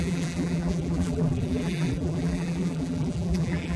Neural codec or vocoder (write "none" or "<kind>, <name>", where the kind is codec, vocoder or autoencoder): vocoder, BigVGAN v2